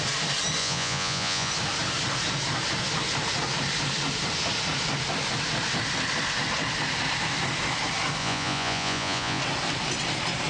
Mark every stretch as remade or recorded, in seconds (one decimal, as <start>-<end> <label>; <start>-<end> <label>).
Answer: 0.0-0.6 recorded; 0.6-1.5 remade; 1.5-8.2 recorded; 8.2-9.4 remade; 9.4-10.5 recorded